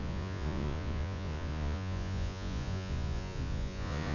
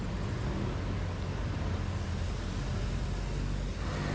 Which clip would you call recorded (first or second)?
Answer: second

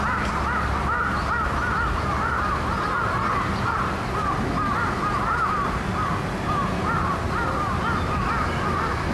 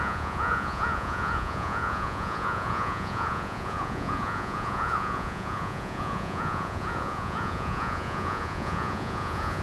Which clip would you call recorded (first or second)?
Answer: first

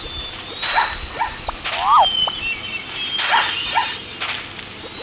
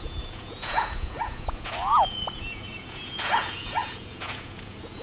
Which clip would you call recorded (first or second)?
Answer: first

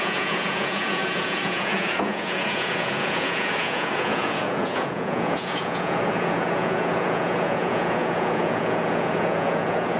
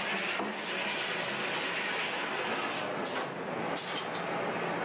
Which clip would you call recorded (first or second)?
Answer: second